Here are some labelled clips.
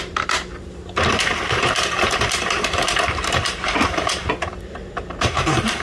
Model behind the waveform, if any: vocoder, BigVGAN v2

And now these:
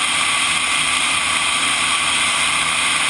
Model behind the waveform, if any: vocoder, BigVGAN v2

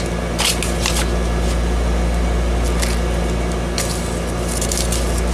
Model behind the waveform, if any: none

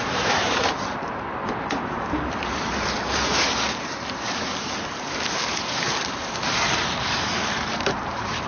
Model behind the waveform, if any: vocoder, BigVGAN v2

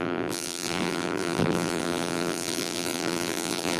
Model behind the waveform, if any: vocoder, BigVGAN v2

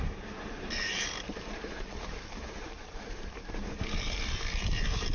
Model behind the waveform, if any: vocoder, BigVGAN v2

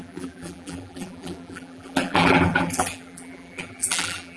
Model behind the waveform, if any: vocoder, BigVGAN v2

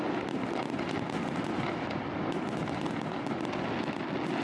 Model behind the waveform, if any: none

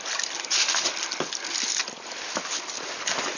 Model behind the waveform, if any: vocoder, BigVGAN v2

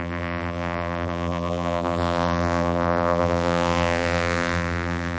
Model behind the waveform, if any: vocoder, BigVGAN v2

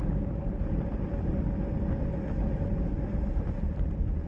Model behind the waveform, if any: none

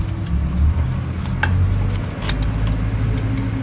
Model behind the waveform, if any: none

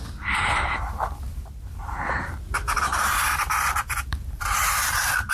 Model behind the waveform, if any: vocoder, BigVGAN v2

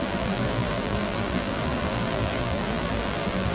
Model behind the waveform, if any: vocoder, BigVGAN v2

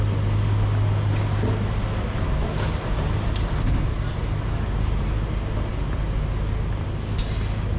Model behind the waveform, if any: none